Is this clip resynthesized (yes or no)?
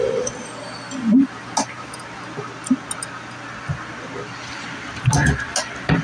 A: no